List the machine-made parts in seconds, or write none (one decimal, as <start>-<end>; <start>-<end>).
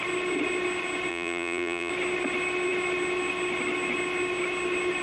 1.1-1.9